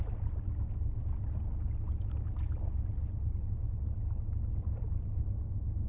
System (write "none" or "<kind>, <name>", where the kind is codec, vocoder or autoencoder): none